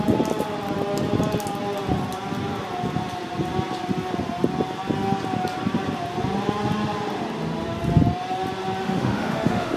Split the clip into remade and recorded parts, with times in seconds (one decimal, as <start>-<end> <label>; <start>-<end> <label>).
0.0-8.8 recorded; 8.8-9.8 remade